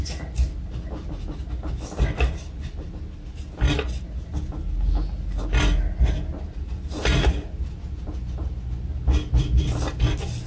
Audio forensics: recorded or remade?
recorded